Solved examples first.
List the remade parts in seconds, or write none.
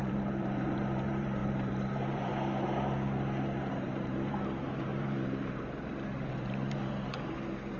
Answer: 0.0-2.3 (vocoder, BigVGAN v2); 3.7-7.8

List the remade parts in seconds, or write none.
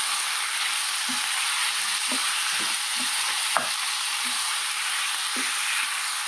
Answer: 2.2-4.9 (vocoder, BigVGAN v2)